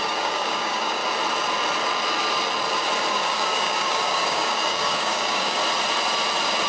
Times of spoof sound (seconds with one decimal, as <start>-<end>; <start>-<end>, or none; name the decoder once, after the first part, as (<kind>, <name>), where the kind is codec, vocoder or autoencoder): 0.0-1.0 (codec, DAC); 3.1-5.6